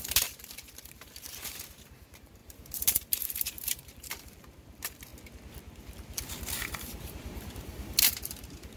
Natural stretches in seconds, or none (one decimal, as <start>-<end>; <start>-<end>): 5.1-6.5